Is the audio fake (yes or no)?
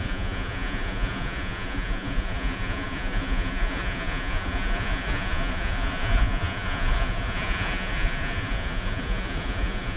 yes